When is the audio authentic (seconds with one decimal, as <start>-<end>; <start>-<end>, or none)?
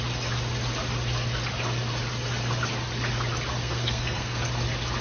0.0-3.6; 4.4-5.0